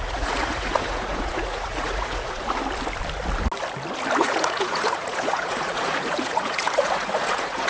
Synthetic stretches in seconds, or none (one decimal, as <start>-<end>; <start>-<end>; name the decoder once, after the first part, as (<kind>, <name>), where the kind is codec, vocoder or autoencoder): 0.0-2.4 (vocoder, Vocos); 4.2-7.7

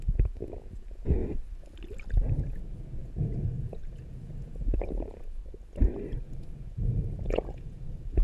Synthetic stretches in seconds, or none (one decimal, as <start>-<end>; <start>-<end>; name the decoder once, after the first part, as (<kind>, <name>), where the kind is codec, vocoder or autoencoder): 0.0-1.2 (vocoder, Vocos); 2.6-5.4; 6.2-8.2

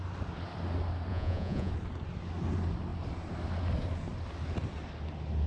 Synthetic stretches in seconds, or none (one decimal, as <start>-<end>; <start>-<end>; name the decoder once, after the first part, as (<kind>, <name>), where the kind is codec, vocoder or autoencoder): 1.1-1.7 (vocoder, Vocos)